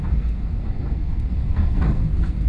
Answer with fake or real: fake